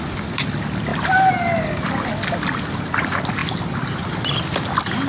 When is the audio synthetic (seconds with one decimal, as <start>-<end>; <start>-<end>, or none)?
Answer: none